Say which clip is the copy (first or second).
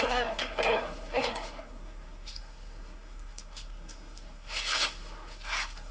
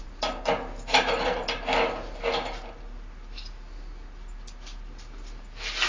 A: first